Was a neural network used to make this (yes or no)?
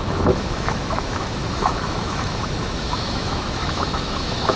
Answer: yes